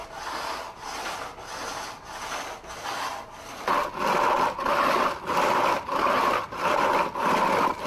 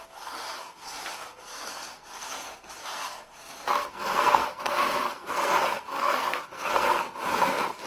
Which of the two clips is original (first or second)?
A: first